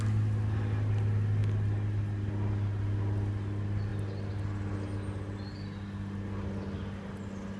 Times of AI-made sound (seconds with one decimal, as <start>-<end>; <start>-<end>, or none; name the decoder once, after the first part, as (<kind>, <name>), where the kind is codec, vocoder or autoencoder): none